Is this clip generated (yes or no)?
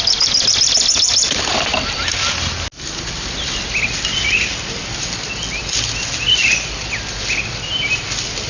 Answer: no